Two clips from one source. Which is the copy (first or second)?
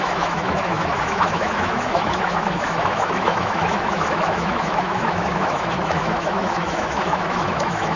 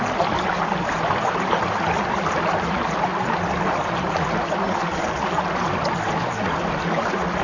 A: first